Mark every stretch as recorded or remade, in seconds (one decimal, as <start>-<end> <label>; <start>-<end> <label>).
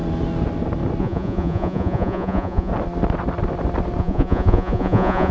0.0-1.0 recorded; 1.0-2.7 remade; 2.7-4.0 recorded; 4.0-5.3 remade